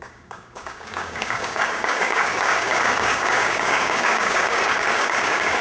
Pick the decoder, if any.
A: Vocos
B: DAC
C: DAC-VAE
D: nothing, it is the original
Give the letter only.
B